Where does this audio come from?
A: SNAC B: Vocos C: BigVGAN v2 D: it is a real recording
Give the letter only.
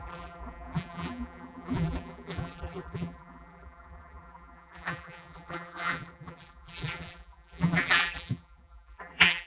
C